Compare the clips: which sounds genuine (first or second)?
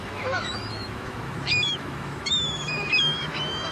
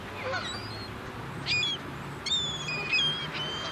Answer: second